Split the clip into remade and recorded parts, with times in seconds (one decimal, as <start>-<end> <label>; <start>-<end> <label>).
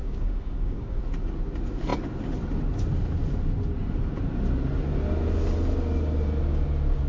0.0-1.0 remade; 1.0-7.1 recorded